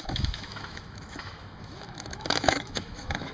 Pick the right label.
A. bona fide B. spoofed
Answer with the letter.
B